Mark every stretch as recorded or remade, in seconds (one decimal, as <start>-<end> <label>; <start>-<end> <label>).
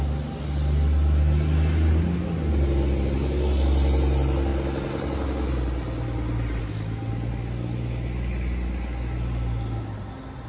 0.0-10.5 recorded